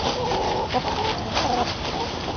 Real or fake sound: real